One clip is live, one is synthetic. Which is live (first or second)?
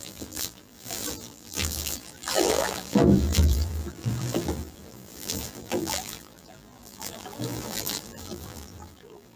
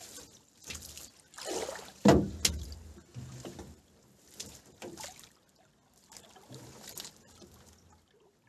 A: second